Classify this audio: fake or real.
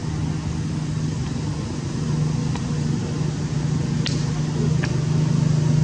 real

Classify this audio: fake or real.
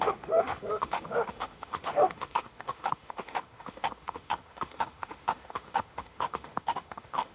fake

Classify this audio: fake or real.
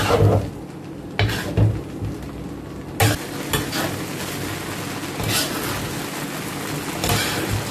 real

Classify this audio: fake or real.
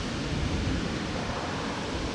real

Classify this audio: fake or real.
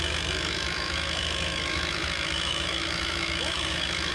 fake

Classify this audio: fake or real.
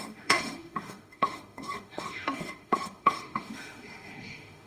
fake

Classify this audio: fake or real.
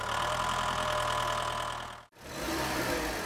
real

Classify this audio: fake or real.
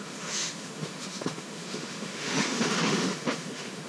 fake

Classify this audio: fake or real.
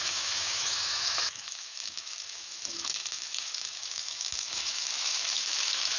fake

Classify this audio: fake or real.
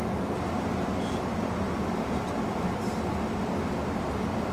real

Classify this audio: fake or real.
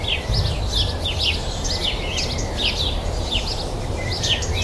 real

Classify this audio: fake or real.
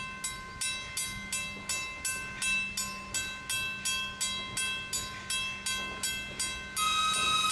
real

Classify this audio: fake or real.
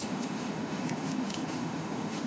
fake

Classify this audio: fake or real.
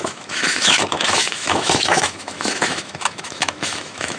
fake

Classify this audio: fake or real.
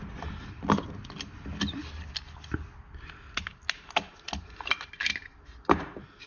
real